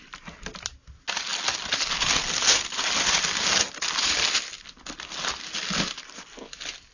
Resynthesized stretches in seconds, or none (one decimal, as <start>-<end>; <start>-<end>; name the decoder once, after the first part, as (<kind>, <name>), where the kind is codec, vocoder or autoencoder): none